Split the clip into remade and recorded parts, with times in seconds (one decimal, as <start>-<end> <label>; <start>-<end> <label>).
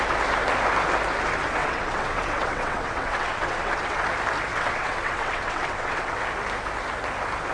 0.0-1.6 recorded; 1.6-4.0 remade; 4.0-4.5 recorded; 4.5-6.2 remade; 6.2-7.5 recorded